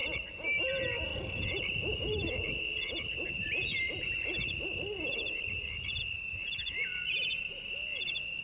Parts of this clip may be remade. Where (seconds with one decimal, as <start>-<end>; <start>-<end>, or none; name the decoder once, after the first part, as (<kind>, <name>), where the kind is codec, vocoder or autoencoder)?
0.0-0.7 (vocoder, BigVGAN v2); 1.1-6.0; 6.9-7.5

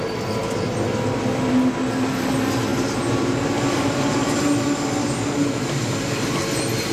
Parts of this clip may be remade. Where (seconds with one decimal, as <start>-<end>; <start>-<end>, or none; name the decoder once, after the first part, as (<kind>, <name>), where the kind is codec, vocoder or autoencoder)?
0.4-1.2 (vocoder, BigVGAN v2)